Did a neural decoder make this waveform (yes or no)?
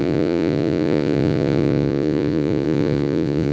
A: yes